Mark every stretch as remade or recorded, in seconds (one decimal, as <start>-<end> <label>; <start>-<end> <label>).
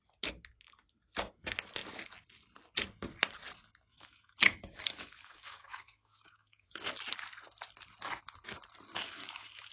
0.0-3.9 recorded; 3.9-6.9 remade; 6.9-8.9 recorded; 8.9-9.7 remade